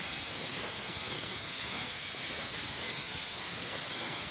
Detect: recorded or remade remade